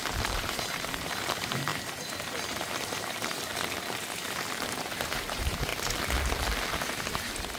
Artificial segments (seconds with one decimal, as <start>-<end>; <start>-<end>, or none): 0.0-3.5; 4.6-5.7; 6.7-7.6